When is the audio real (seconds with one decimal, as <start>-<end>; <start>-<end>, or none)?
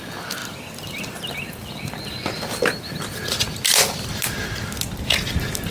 0.0-5.7